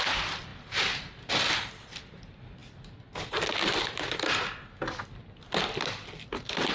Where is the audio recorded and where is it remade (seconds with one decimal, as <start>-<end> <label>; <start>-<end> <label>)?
0.0-6.7 recorded